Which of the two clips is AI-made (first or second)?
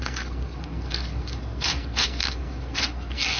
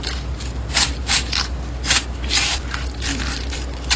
first